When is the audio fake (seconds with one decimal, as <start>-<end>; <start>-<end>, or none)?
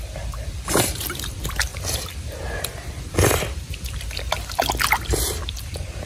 0.0-1.7; 3.0-6.1